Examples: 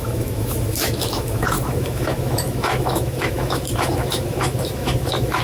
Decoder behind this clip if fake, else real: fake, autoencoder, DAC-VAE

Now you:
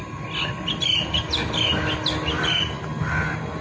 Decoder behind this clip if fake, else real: real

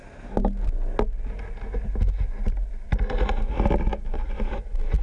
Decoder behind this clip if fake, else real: real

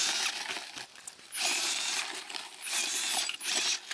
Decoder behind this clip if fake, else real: real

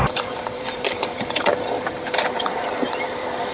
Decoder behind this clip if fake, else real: fake, vocoder, BigVGAN v2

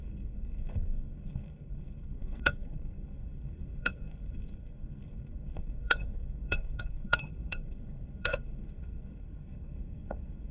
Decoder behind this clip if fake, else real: fake, codec, SNAC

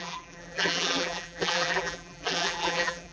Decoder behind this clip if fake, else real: fake, vocoder, BigVGAN v2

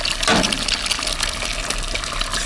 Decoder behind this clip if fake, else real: real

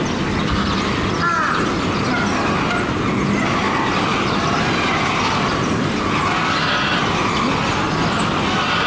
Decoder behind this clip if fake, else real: real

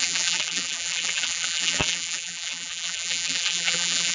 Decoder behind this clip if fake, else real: fake, vocoder, BigVGAN v2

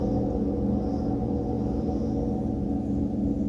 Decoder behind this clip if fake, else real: real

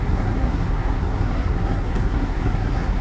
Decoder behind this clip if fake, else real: fake, codec, SNAC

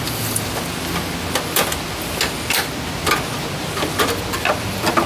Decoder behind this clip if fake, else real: real